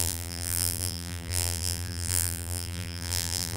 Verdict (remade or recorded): remade